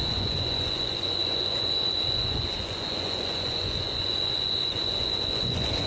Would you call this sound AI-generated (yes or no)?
yes